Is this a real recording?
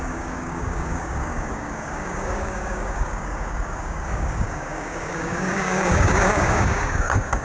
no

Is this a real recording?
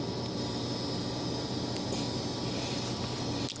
yes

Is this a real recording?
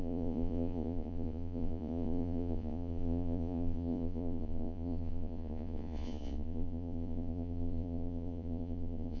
no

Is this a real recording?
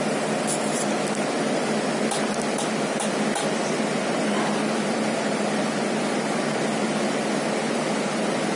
yes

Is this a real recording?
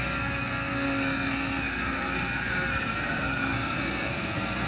no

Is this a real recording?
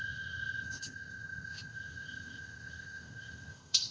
no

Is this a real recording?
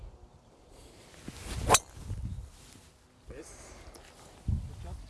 yes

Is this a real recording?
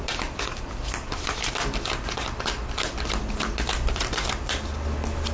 yes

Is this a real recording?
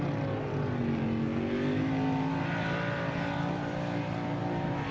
yes